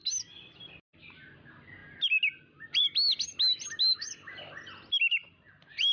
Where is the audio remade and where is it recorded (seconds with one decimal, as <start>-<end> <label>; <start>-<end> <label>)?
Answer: 0.0-5.9 recorded